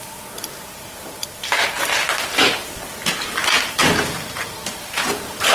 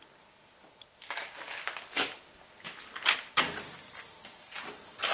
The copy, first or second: first